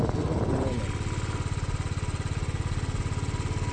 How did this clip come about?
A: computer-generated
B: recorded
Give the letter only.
B